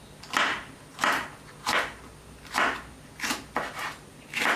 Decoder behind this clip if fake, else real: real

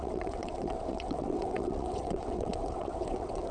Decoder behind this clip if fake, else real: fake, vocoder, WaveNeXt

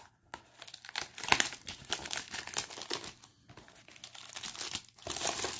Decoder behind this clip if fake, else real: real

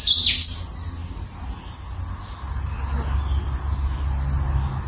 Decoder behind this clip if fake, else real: real